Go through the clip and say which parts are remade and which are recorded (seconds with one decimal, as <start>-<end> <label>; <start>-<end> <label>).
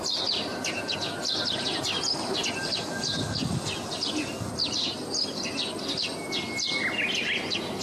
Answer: 0.0-7.8 recorded